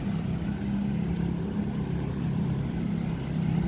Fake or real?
real